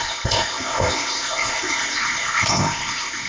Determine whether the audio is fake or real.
fake